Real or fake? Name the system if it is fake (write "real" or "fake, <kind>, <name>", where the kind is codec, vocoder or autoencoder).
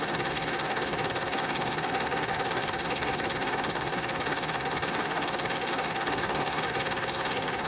fake, codec, SNAC